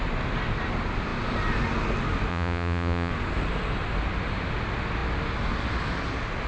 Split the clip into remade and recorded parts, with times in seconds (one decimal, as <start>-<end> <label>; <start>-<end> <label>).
0.0-2.3 recorded; 2.3-3.1 remade; 3.1-6.5 recorded